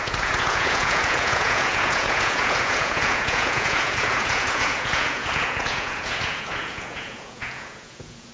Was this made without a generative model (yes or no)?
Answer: no